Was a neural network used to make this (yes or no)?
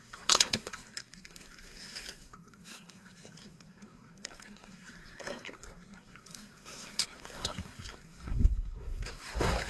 yes